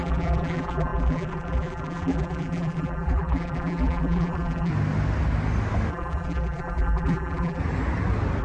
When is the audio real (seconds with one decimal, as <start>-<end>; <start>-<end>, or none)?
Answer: 4.7-5.9; 7.6-8.4